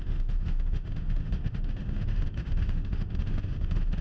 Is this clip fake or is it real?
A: fake